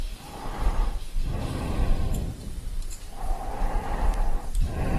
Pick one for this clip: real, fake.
fake